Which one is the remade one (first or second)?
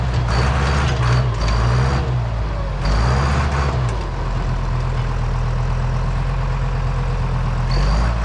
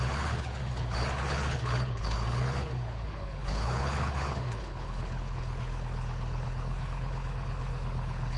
second